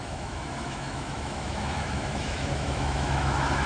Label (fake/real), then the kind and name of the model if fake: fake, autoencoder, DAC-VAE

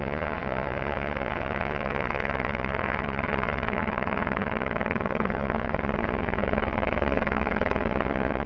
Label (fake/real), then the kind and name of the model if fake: fake, vocoder, WaveNeXt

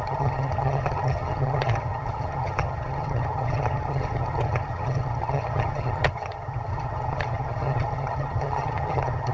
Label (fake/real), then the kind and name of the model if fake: fake, vocoder, HiFi-GAN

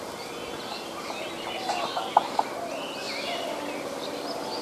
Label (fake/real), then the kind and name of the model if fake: real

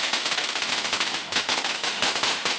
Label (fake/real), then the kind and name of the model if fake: fake, autoencoder, DAC-VAE